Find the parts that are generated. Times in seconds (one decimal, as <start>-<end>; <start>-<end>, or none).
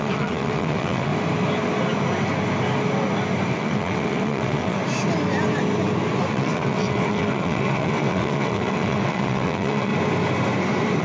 0.0-1.1; 3.5-4.8; 6.3-9.9